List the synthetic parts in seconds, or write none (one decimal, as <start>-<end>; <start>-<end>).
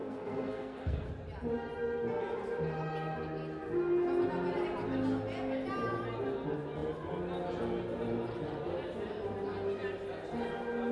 0.0-1.1